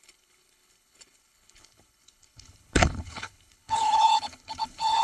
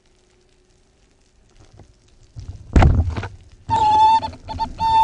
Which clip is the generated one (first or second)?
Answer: first